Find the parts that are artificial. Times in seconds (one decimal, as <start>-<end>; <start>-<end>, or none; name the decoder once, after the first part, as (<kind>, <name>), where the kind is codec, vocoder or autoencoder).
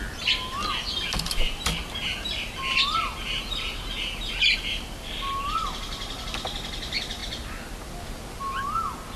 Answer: none